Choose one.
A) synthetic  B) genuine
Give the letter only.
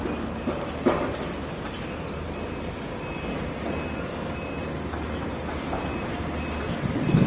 B